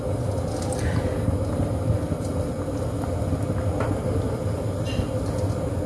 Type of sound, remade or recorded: recorded